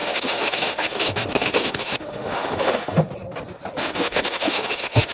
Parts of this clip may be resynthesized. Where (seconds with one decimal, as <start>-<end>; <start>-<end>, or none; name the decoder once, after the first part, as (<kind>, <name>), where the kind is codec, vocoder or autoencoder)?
0.0-3.1 (autoencoder, DAC-VAE); 3.8-5.1